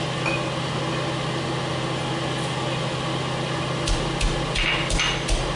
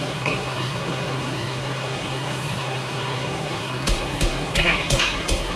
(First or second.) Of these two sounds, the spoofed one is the second